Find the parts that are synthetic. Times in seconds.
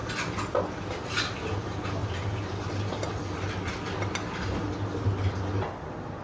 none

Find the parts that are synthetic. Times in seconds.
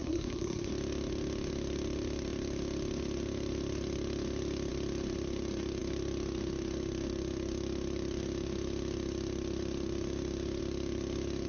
0.0-0.7 (codec, SNAC)